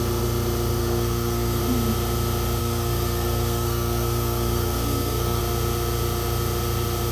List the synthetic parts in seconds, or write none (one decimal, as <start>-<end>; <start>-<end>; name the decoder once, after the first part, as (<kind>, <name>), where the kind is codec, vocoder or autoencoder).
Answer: 0.8-1.6 (codec, SNAC); 2.6-5.4